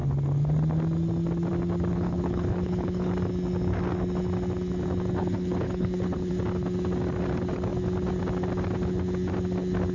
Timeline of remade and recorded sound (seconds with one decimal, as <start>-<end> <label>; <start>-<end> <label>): 0.0-1.9 recorded; 1.9-3.1 remade; 3.1-5.2 recorded; 5.2-6.3 remade; 6.3-9.9 recorded